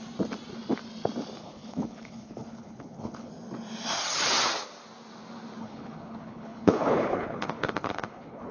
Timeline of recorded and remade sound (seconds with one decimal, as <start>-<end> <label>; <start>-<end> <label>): 0.0-1.4 recorded; 1.4-3.3 remade; 3.3-5.6 recorded; 5.6-8.5 remade